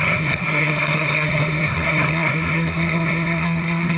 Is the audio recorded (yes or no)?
no